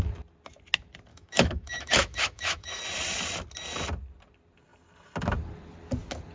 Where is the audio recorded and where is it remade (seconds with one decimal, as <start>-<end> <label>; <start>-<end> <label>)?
0.0-1.1 recorded; 1.1-2.8 remade; 2.8-6.3 recorded

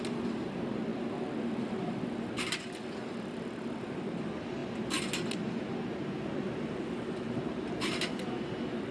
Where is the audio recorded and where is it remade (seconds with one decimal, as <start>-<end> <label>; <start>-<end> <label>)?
0.0-8.9 recorded

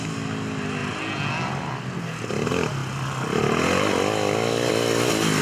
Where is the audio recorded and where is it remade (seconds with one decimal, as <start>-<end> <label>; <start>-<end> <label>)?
0.0-5.4 recorded

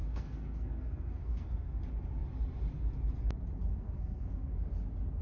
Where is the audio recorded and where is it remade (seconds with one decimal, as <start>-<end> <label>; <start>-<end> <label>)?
0.0-1.8 remade; 1.8-3.7 recorded; 3.7-4.7 remade; 4.7-5.2 recorded

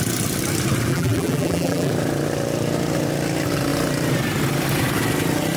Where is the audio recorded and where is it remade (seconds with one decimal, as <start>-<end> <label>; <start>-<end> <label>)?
0.0-0.9 recorded; 0.9-1.9 remade; 1.9-5.6 recorded